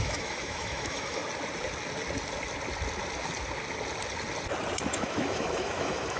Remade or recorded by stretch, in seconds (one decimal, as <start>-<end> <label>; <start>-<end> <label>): 0.0-1.2 remade; 1.2-4.9 recorded; 4.9-6.2 remade